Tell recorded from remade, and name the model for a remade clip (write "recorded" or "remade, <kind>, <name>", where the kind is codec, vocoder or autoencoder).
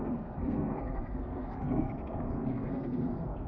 remade, codec, SNAC